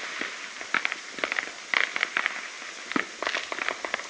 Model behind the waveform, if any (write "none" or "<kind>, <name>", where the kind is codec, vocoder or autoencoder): none